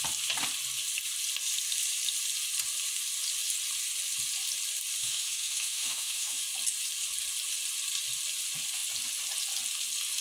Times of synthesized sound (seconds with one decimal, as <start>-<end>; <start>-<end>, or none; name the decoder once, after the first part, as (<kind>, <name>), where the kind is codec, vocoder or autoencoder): 5.0-6.4 (autoencoder, DAC-VAE)